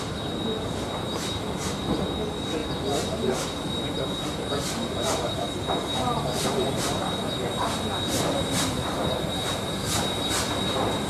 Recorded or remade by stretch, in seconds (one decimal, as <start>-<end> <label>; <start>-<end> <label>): 0.0-11.1 recorded